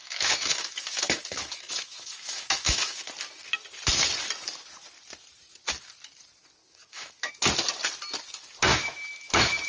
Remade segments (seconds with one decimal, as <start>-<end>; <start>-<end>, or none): 0.0-3.1; 6.6-7.3; 8.7-9.7